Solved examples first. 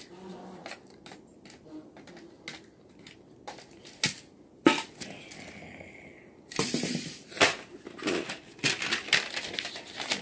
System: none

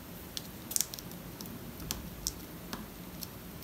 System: none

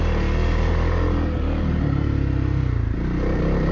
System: none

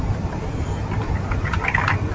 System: vocoder, BigVGAN v2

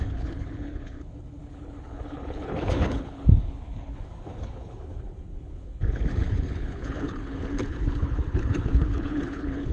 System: codec, HILCodec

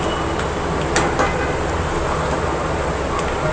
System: none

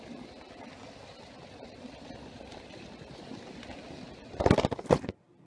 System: vocoder, BigVGAN v2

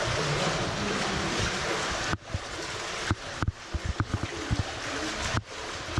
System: none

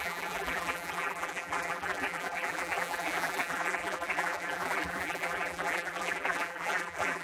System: vocoder, BigVGAN v2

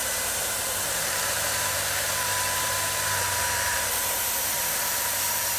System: vocoder, BigVGAN v2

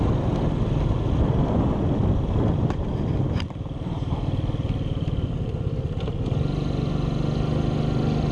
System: none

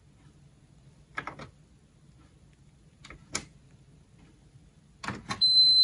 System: none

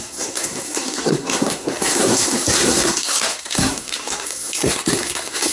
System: codec, SNAC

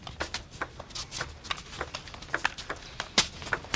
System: none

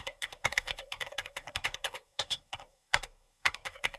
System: codec, SNAC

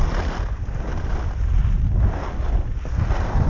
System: none